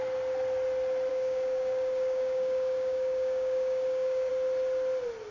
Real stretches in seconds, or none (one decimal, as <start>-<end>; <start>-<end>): 0.0-1.1; 4.3-5.3